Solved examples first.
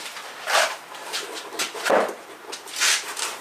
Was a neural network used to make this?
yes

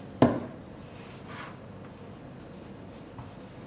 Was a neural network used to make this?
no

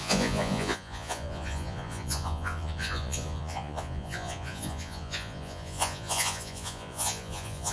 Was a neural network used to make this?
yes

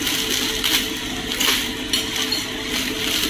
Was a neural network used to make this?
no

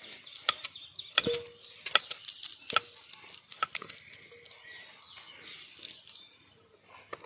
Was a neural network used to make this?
no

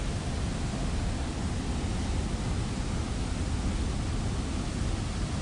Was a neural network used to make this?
no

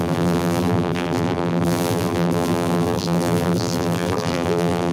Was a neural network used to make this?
yes